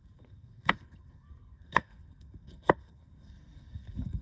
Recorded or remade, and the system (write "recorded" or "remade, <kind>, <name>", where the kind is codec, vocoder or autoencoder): remade, codec, SNAC